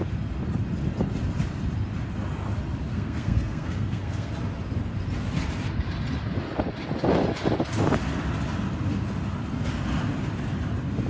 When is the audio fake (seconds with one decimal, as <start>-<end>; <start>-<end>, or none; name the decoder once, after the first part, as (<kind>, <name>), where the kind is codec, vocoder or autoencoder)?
2.9-4.3 (codec, SNAC)